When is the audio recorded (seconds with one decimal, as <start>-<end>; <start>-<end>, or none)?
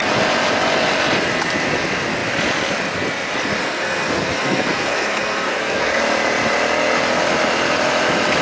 0.0-3.6; 6.0-8.4